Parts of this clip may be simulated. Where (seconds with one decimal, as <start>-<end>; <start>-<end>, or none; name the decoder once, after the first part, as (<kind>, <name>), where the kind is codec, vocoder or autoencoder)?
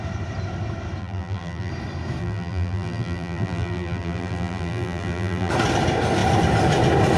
1.0-1.7 (vocoder, BigVGAN v2); 2.2-5.5